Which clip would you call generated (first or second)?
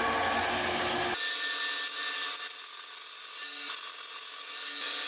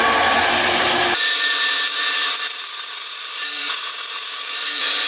second